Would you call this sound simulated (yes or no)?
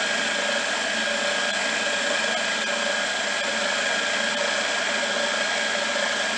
no